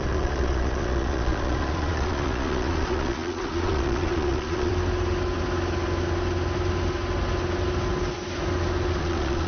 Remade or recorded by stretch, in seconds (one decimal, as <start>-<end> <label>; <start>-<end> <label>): 0.0-4.7 remade; 4.7-9.0 recorded; 9.0-9.5 remade